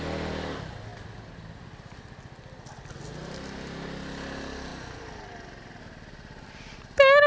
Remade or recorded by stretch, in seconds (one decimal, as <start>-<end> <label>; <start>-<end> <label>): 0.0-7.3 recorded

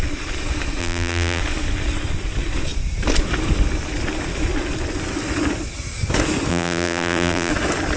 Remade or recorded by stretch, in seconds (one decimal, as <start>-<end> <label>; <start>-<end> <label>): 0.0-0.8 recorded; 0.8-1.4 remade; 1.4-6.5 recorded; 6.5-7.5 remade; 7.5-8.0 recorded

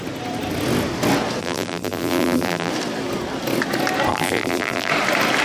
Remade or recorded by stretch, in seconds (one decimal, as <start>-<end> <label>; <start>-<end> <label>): 0.0-1.4 recorded; 1.4-2.7 remade; 2.7-4.1 recorded; 4.1-4.9 remade; 4.9-5.4 recorded